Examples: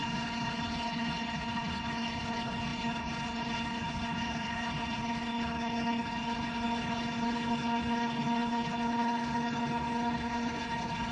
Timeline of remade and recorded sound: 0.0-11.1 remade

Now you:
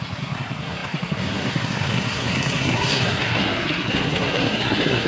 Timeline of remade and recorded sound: 0.0-5.1 remade

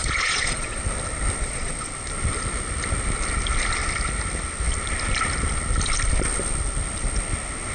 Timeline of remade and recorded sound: 0.0-0.8 remade; 0.8-1.4 recorded; 1.4-1.9 remade; 1.9-7.7 recorded

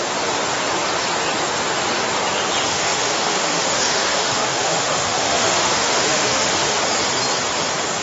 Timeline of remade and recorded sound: 0.0-2.7 recorded; 2.7-6.8 remade; 6.8-8.0 recorded